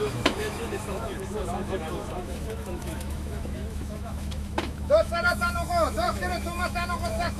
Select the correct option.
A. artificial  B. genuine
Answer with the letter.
A